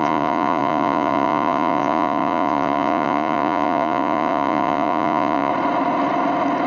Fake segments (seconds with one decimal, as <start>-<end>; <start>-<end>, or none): 0.0-5.5